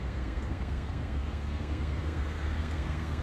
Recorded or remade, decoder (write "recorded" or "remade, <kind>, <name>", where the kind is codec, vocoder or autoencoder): remade, codec, SNAC